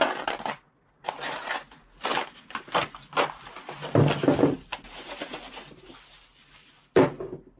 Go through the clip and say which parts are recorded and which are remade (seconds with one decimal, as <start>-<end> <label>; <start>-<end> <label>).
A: 0.0-7.6 recorded